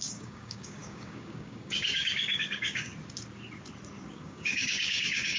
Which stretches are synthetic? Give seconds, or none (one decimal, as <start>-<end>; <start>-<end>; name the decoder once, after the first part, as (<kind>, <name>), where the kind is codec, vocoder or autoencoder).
0.0-2.9 (codec, DAC); 4.1-5.4